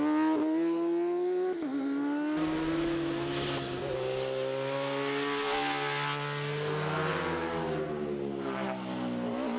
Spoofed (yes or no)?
no